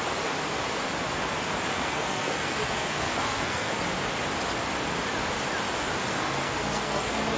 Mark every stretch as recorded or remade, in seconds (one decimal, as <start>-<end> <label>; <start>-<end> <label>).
0.0-1.7 recorded; 1.7-3.8 remade; 3.8-6.0 recorded; 6.0-7.4 remade